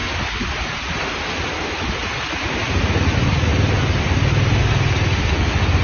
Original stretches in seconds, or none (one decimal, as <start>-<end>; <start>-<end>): 0.0-5.8